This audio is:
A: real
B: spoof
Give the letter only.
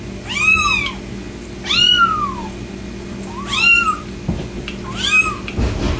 A